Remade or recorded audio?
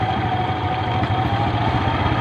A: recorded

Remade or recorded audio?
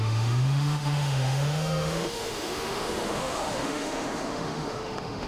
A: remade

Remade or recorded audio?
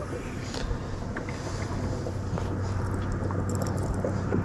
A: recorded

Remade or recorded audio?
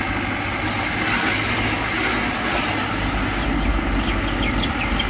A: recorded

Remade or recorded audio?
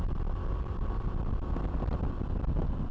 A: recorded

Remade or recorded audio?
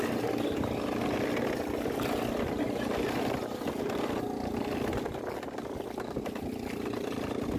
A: recorded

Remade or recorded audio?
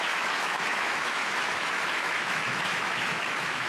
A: remade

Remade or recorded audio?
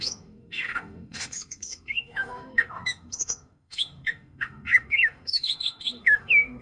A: remade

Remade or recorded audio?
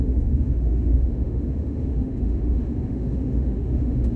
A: remade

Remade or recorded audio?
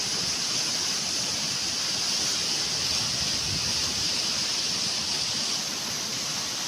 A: recorded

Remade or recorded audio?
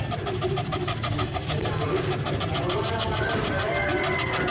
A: recorded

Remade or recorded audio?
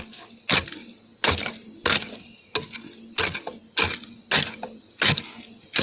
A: recorded